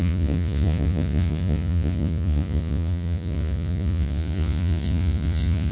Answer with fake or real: fake